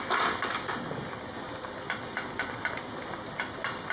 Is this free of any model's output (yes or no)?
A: yes